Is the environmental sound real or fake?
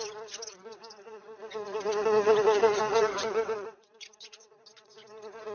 fake